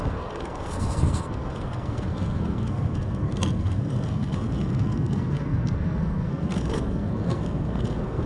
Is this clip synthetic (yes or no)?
yes